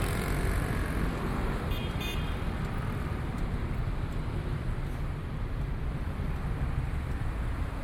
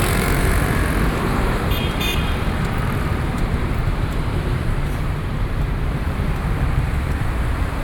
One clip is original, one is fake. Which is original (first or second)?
first